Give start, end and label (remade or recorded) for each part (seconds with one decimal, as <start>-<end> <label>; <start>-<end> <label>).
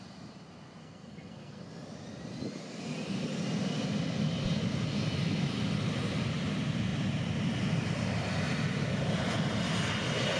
0.0-0.8 recorded; 0.8-1.7 remade; 1.7-10.4 recorded